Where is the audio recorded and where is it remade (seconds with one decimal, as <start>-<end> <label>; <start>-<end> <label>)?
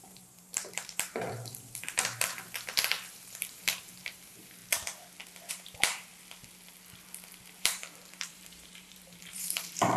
0.0-4.6 remade; 4.6-5.5 recorded; 5.5-6.1 remade; 6.1-7.6 recorded; 7.6-10.0 remade